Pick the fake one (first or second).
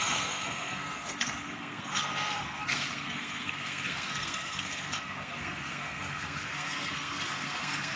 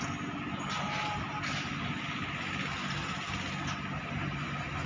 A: first